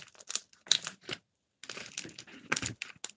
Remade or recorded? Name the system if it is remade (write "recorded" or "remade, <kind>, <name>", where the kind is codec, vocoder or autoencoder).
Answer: recorded